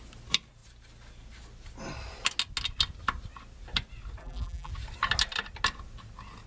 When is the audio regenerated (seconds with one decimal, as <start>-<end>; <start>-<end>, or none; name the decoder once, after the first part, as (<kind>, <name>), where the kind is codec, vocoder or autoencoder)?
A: 4.2-4.7 (vocoder, BigVGAN v2)